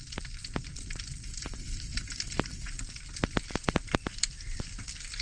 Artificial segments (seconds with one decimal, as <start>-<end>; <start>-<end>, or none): none